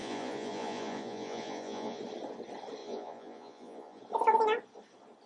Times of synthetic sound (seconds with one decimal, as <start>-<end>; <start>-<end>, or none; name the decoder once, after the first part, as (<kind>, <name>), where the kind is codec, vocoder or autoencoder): 0.0-2.0 (vocoder, Vocos); 2.8-4.0